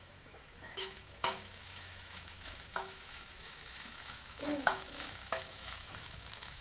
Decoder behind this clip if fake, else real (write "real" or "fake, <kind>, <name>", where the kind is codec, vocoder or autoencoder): fake, autoencoder, DAC-VAE